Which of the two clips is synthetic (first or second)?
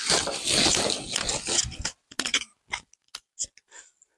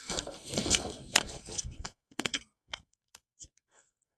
second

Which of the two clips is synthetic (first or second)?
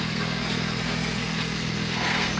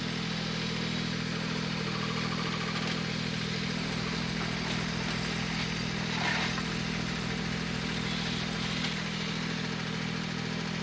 first